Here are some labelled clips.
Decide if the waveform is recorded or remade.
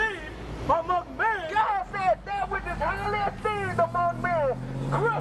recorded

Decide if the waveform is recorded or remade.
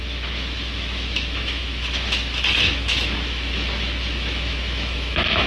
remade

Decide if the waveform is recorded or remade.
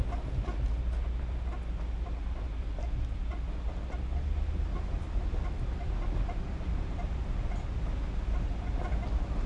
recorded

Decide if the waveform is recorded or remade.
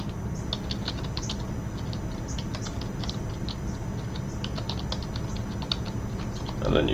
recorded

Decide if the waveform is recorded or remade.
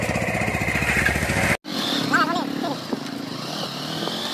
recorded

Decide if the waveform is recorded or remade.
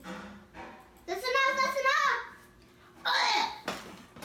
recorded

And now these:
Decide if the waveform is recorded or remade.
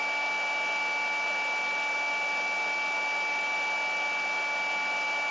recorded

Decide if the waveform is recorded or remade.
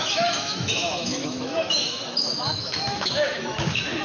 remade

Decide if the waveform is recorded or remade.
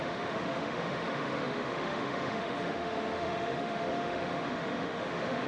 remade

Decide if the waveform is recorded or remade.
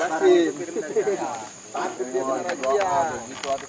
recorded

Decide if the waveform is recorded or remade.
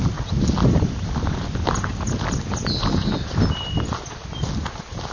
recorded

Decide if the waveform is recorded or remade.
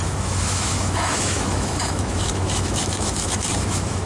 remade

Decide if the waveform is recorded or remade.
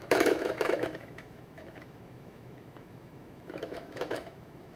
remade